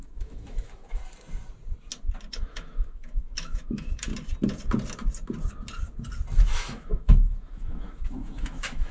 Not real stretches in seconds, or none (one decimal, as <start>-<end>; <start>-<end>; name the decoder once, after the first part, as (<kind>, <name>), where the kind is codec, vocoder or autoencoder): 0.0-1.0 (autoencoder, DAC-VAE); 2.3-4.1; 6.4-8.9